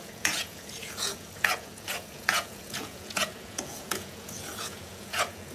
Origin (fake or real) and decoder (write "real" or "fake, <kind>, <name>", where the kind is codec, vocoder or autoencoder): fake, vocoder, Vocos